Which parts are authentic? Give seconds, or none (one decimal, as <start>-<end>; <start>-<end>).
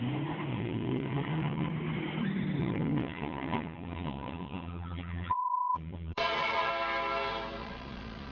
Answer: 0.0-0.5; 1.7-2.6; 6.7-7.6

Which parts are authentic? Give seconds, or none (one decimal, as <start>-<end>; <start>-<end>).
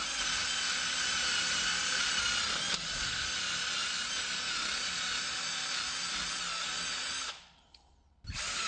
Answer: 0.0-8.7